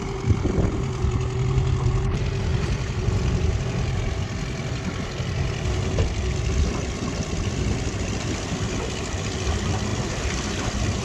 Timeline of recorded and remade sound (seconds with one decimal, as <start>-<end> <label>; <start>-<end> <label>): 0.0-11.0 remade